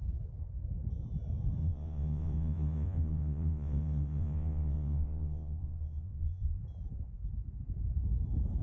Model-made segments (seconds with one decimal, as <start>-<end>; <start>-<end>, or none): 1.6-6.6